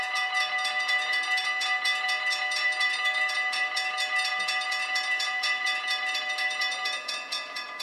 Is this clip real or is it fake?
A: fake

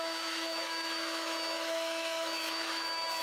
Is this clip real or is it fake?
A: fake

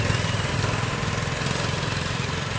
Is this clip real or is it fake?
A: real